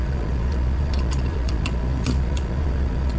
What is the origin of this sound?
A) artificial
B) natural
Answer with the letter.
A